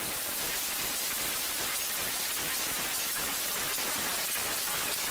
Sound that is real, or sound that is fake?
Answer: real